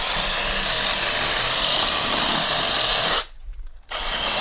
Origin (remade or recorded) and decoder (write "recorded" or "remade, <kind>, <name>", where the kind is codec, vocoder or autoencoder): recorded